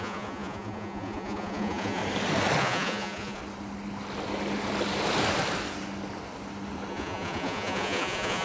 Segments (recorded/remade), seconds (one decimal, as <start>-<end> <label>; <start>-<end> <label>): 0.0-2.0 remade; 2.0-2.6 recorded; 2.6-3.4 remade; 3.4-6.9 recorded; 6.9-8.4 remade